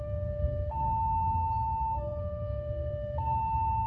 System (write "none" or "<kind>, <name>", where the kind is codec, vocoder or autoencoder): codec, SNAC